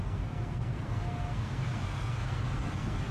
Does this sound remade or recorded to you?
remade